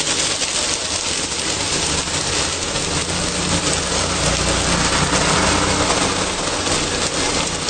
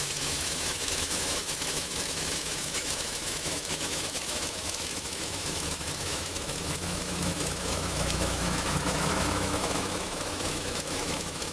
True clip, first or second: first